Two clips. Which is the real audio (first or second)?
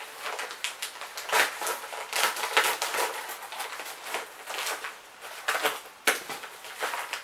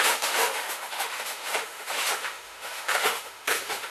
first